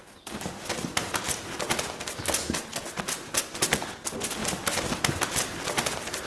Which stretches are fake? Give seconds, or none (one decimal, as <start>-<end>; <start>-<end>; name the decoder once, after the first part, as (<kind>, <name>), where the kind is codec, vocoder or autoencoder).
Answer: none